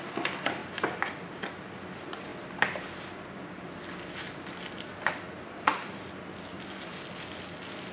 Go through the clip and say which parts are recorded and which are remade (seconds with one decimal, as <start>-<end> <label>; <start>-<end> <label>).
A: 0.0-7.9 recorded